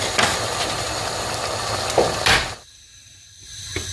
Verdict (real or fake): real